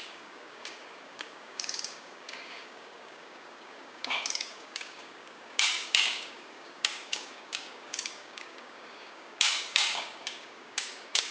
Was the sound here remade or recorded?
remade